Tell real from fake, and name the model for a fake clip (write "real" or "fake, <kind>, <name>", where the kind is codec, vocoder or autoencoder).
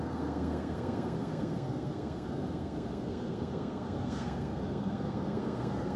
fake, codec, SNAC